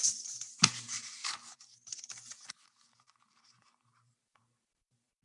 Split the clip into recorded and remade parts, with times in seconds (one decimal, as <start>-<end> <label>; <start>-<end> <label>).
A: 0.0-1.2 remade; 1.2-2.0 recorded; 2.0-5.2 remade